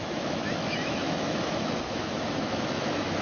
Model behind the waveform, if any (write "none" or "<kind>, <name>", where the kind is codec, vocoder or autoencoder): autoencoder, DAC-VAE